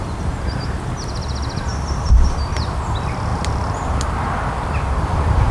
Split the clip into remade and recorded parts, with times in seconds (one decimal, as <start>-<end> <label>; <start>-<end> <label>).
0.0-1.7 recorded; 1.7-2.4 remade; 2.4-3.3 recorded; 3.3-4.0 remade; 4.0-5.5 recorded